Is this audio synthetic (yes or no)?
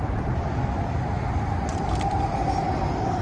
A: no